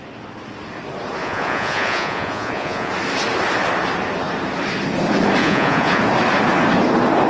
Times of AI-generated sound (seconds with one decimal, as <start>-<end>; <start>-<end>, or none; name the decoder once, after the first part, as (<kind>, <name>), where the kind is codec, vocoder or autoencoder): 1.2-2.9 (vocoder, Vocos); 5.4-6.0